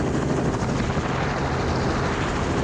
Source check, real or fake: real